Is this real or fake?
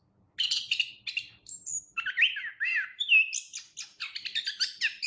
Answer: real